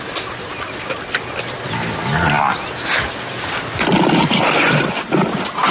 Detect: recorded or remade recorded